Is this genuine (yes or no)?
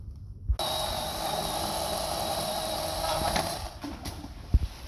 yes